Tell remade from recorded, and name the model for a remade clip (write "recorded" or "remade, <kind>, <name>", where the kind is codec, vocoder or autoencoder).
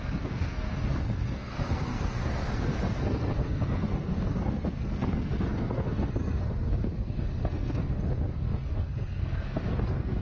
remade, codec, SNAC